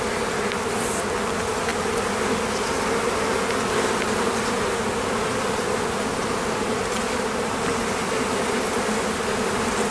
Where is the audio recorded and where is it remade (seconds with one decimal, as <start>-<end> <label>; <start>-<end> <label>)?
0.0-9.9 recorded